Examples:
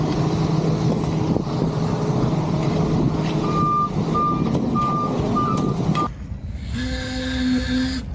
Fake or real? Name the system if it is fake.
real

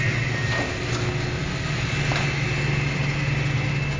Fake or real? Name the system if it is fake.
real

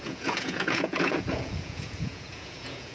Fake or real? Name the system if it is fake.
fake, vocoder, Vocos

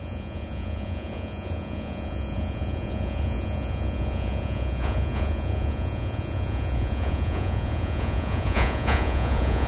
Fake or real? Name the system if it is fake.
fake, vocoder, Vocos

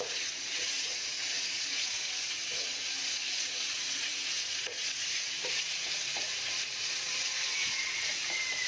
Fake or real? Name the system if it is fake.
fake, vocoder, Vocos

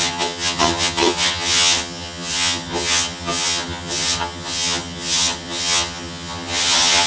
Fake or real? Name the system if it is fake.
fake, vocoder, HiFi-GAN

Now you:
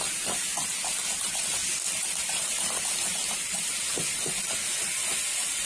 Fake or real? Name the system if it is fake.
real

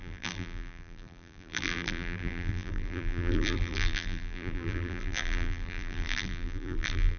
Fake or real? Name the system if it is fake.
fake, vocoder, BigVGAN v2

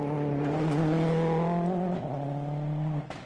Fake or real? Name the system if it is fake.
real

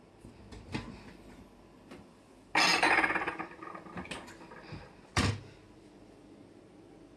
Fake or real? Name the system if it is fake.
real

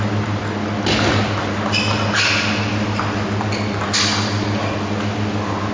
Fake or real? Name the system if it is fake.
real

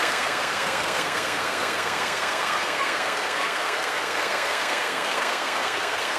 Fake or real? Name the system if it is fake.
fake, codec, SNAC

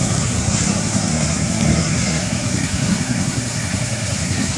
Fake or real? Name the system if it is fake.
fake, codec, SNAC